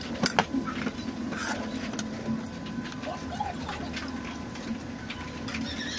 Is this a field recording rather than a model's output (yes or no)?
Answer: yes